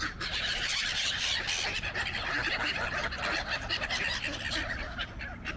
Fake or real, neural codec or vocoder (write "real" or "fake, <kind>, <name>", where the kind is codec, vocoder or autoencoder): real